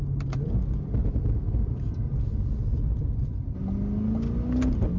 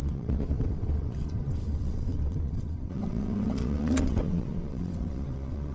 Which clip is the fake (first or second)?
second